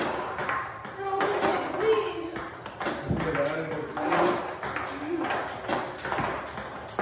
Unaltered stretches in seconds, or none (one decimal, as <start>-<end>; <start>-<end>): 0.0-7.0